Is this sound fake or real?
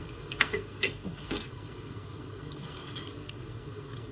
fake